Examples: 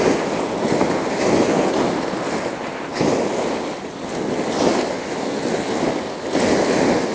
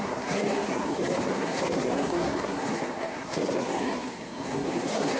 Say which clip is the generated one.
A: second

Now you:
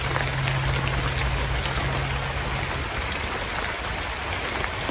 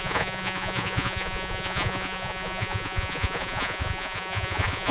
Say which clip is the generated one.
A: second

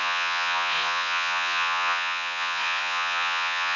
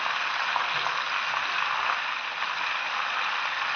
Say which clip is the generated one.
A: first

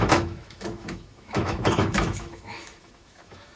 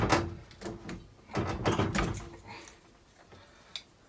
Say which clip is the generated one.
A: first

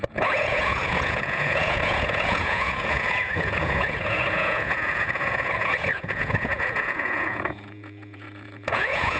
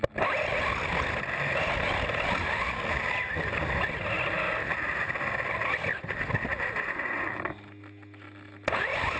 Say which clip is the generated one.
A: first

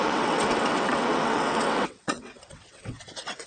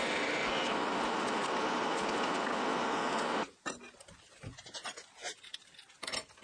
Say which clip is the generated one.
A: first